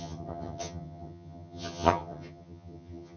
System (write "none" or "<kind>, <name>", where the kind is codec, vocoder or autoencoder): vocoder, HiFi-GAN